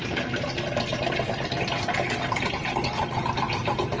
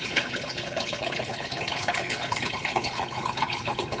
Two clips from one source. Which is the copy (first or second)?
second